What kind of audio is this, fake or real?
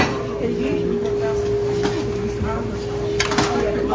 real